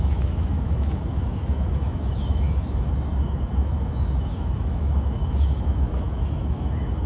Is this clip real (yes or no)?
no